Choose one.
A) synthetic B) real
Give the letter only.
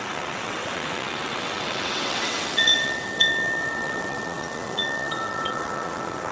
A